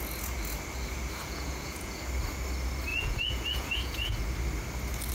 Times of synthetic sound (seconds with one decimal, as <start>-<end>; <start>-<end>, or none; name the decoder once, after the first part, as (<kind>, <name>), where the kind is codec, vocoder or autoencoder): 1.2-2.0 (vocoder, Vocos); 2.9-4.2